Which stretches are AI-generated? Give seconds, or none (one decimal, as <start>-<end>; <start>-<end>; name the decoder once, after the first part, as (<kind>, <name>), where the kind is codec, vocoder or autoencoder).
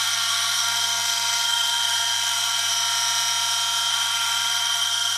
0.0-2.7 (codec, SNAC); 3.9-5.2